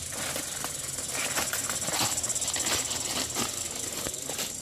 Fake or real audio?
real